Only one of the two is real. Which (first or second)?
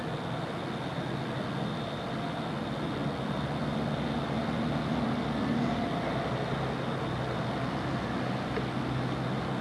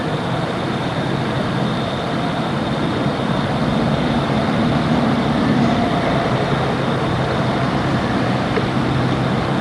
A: first